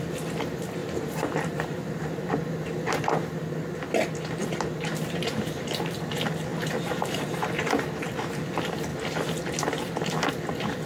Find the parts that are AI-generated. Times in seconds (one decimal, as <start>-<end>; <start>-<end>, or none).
0.8-2.5; 4.4-6.1; 6.5-7.7